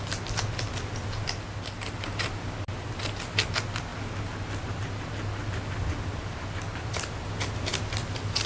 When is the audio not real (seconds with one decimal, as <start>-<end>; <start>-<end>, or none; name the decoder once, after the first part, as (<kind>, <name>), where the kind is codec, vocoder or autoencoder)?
none

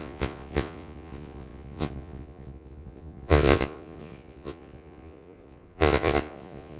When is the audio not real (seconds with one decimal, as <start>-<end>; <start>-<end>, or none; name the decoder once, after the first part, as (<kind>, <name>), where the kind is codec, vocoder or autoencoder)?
0.0-6.8 (vocoder, Vocos)

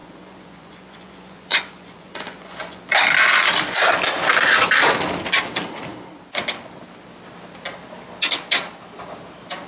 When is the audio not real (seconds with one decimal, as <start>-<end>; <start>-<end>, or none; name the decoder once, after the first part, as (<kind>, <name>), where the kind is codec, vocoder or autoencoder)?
0.0-2.8 (vocoder, Vocos)

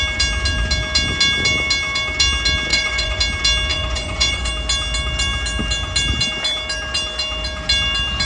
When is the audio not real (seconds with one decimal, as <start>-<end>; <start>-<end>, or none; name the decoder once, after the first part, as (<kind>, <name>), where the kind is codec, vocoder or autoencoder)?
2.7-3.2 (vocoder, Vocos); 3.7-4.5

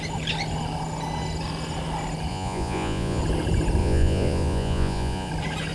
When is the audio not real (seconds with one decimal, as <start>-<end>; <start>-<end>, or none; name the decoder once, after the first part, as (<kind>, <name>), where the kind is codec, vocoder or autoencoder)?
2.3-3.2 (vocoder, Vocos); 3.8-5.3

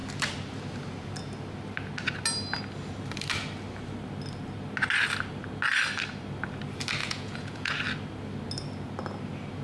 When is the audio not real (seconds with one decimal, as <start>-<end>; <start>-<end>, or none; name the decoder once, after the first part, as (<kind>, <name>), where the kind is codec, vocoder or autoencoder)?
7.0-7.7 (vocoder, Vocos)